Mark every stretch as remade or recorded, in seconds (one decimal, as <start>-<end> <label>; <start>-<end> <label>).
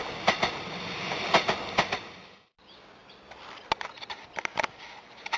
0.0-5.4 recorded